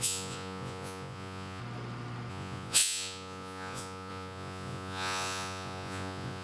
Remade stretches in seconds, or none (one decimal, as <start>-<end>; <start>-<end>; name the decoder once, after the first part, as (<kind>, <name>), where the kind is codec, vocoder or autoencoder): 0.0-1.6 (vocoder, Vocos); 2.3-6.4